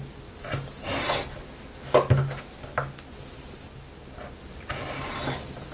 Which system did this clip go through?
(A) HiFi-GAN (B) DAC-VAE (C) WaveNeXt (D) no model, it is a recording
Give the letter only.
D